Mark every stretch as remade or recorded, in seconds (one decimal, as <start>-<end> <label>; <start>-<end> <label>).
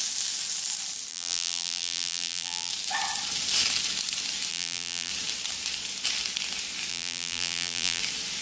0.0-1.1 recorded; 1.1-2.7 remade; 2.7-4.5 recorded; 4.5-5.1 remade; 5.1-6.9 recorded; 6.9-8.0 remade; 8.0-8.4 recorded